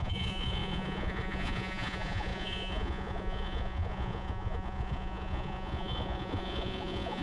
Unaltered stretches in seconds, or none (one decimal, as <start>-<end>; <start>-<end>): none